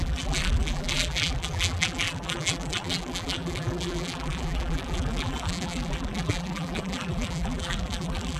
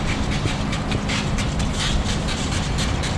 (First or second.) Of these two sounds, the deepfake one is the first